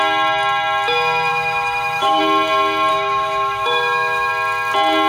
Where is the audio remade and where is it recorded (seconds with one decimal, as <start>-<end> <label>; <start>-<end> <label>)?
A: 0.0-1.3 recorded; 1.3-2.2 remade; 2.2-2.9 recorded; 2.9-4.3 remade; 4.3-5.1 recorded